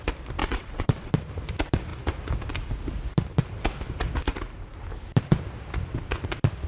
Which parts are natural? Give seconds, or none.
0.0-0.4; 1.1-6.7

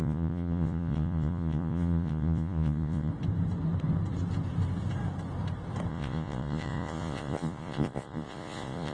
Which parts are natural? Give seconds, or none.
3.1-5.9

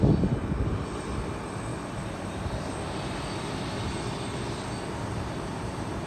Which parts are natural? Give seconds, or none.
0.0-1.7; 2.5-5.5

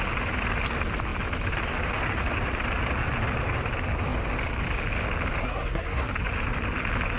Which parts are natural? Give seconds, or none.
0.0-5.4; 6.1-7.2

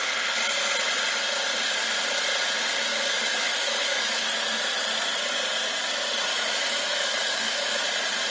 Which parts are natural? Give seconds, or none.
0.0-2.9; 4.6-6.3; 7.8-8.3

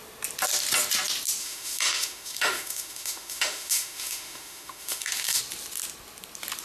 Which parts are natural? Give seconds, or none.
0.0-1.4; 5.4-6.6